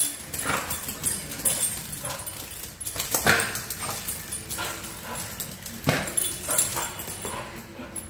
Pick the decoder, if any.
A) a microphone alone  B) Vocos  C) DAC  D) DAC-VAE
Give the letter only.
A